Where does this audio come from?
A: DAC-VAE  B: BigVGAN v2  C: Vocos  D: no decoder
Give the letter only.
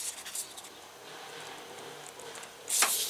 D